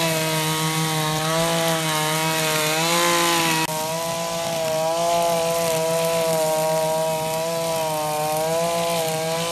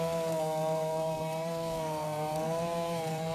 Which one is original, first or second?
first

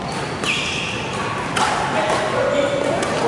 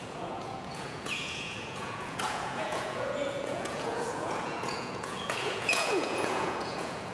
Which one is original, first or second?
first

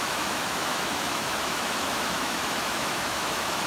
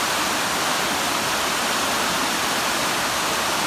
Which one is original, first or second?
second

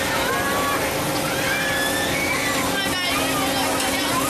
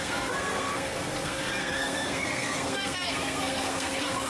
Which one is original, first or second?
first